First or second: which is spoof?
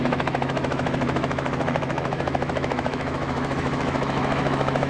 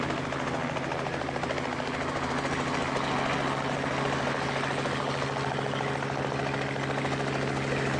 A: first